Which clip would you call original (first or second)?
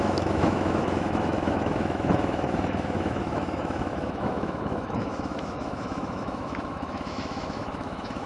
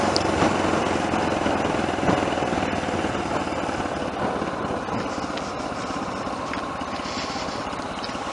second